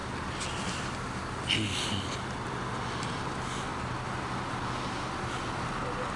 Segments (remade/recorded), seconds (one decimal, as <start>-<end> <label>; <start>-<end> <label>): 0.0-6.2 recorded